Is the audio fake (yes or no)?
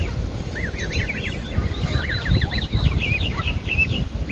yes